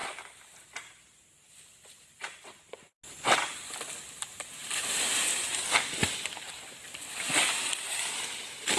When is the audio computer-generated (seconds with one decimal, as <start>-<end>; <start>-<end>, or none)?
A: 0.0-1.6